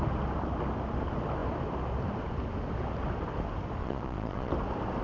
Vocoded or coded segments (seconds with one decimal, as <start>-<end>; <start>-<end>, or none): 3.8-4.5

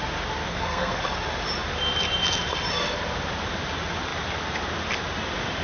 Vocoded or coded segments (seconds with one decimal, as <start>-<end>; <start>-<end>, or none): 0.5-1.0

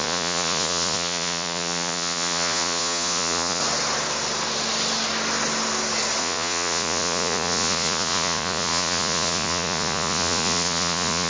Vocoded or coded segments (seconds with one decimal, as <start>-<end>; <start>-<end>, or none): 0.0-3.6; 6.2-11.3

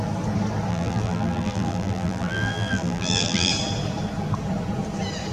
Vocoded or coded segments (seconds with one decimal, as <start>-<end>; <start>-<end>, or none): 0.7-3.5

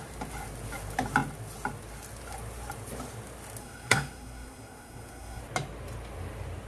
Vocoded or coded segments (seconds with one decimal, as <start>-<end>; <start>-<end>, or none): 3.6-5.4

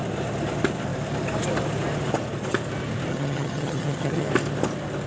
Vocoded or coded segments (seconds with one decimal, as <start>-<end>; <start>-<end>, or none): 3.1-4.3

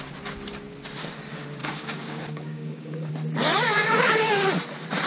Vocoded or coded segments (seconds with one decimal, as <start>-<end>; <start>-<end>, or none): 1.6-3.1

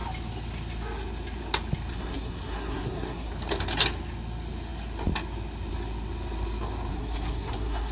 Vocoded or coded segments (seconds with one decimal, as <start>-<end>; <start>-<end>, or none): 1.9-3.3; 6.9-7.9